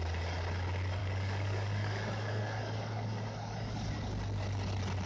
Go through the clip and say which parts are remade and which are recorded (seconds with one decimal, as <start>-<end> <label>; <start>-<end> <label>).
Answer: 0.0-1.0 recorded; 1.0-3.9 remade; 3.9-5.1 recorded